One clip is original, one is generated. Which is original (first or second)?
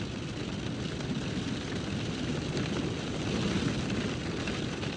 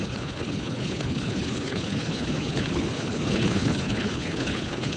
first